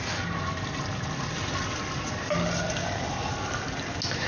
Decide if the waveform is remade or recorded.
recorded